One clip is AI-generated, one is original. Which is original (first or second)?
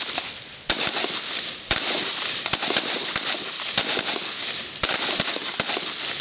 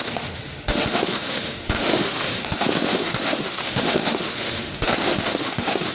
first